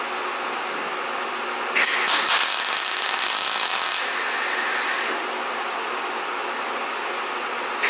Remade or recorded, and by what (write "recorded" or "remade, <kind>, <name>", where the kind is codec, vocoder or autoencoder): recorded